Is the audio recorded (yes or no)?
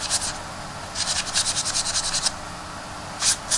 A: yes